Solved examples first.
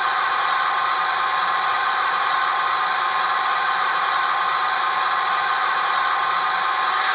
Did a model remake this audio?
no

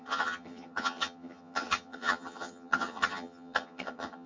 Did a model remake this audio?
yes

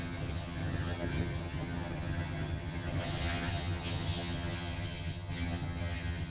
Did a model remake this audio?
yes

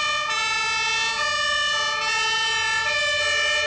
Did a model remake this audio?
no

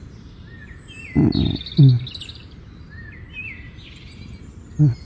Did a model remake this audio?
no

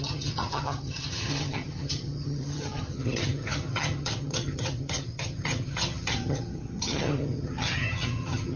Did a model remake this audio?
yes